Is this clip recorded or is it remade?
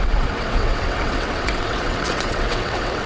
remade